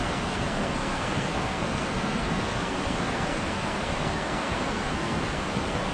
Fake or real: fake